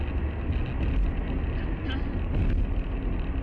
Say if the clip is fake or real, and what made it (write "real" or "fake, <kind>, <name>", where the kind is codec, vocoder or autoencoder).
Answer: real